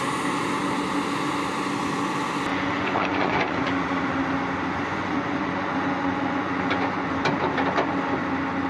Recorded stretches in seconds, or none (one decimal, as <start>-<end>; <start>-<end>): 0.0-2.5; 4.0-4.7; 7.1-8.7